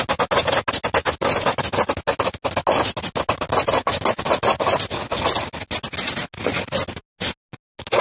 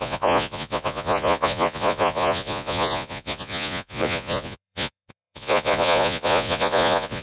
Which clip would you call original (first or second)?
first